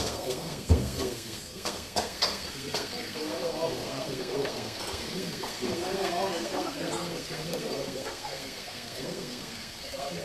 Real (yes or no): no